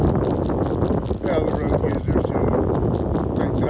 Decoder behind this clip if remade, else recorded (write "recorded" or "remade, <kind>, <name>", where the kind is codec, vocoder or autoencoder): recorded